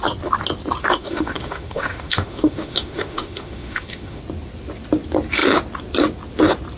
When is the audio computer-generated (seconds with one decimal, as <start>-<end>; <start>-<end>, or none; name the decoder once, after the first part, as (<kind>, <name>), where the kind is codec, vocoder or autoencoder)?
0.8-4.2 (autoencoder, DAC-VAE)